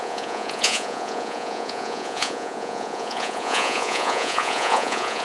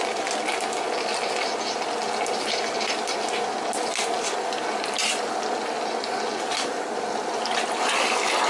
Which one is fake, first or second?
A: first